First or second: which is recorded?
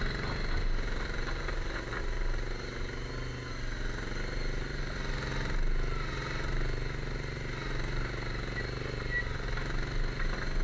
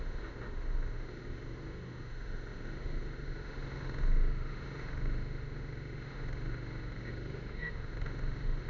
first